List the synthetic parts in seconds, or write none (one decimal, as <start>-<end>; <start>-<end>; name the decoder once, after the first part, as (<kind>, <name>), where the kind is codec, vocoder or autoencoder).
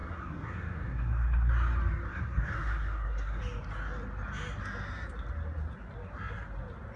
0.0-1.5 (codec, SNAC); 2.1-3.4